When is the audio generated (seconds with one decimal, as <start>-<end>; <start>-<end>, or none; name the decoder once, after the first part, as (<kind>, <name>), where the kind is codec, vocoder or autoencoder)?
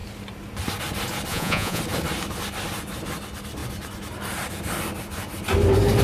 1.3-1.8 (vocoder, Vocos)